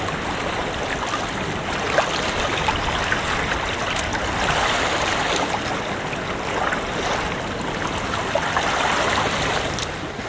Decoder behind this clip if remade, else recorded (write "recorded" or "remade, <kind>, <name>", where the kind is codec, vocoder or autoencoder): recorded